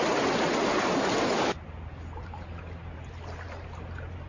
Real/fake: real